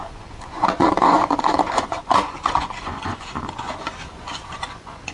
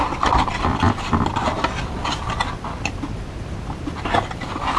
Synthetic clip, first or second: first